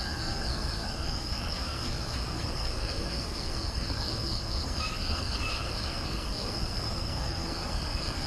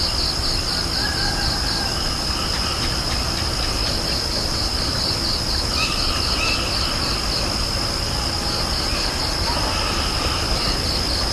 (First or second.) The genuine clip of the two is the second